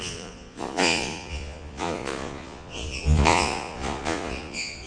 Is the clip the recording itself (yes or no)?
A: no